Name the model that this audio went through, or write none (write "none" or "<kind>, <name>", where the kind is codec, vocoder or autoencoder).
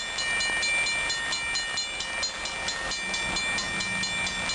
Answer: none